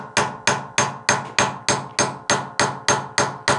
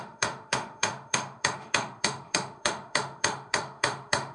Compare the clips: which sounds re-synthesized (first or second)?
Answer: second